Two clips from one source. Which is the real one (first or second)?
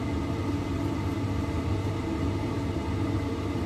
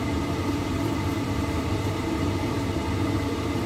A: first